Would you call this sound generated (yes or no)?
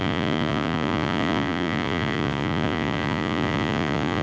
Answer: yes